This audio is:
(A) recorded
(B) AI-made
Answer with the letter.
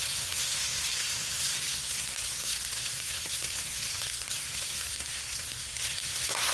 B